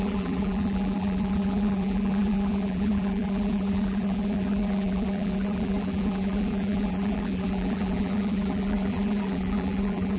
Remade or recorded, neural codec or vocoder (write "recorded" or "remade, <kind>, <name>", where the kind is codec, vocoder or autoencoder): remade, vocoder, BigVGAN v2